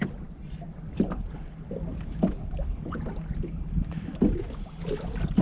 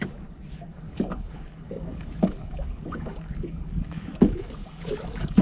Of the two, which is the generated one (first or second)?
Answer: second